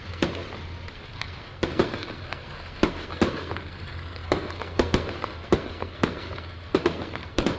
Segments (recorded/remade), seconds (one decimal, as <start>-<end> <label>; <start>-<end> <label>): 0.0-0.4 remade; 0.4-0.9 recorded; 0.9-7.6 remade